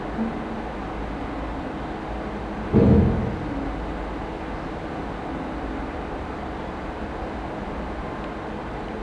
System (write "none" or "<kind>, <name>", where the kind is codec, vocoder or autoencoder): none